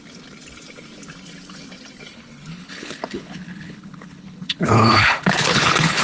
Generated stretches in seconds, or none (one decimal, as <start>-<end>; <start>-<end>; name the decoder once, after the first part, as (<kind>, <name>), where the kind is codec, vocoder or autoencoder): 2.1-6.0 (codec, HILCodec)